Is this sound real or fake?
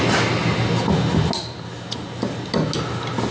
real